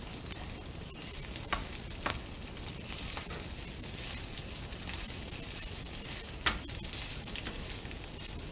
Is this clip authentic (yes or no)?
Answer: yes